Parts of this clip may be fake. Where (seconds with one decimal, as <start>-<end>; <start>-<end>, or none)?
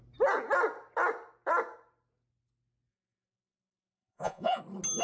2.9-4.6